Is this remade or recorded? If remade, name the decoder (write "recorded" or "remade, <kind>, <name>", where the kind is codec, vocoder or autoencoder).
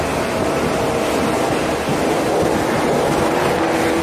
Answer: recorded